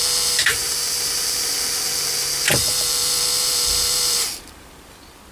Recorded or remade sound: remade